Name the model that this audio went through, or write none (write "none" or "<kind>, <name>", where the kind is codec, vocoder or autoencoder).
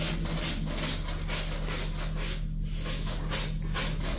none